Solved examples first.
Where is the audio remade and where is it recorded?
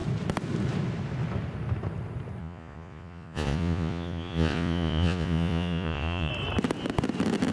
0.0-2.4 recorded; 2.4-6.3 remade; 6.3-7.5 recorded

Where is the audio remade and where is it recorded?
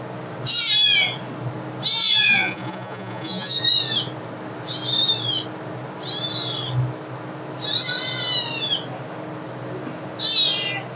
0.0-2.0 recorded; 2.0-3.6 remade; 3.6-11.0 recorded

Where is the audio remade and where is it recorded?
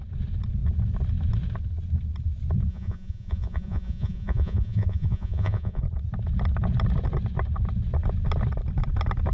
0.0-2.7 recorded; 2.7-5.8 remade; 5.8-9.3 recorded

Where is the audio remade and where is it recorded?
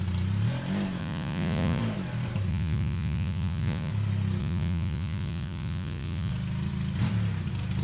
0.0-1.0 recorded; 1.0-1.8 remade; 1.8-2.5 recorded; 2.5-3.9 remade; 3.9-4.4 recorded; 4.4-6.3 remade; 6.3-7.8 recorded